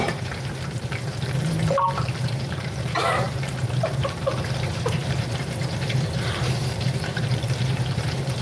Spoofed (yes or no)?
yes